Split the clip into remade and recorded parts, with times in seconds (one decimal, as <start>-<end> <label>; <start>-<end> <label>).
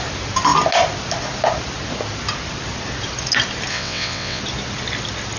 0.0-3.7 recorded; 3.7-4.4 remade; 4.4-5.4 recorded